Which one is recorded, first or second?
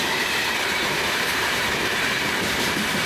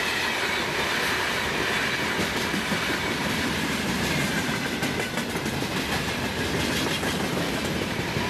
second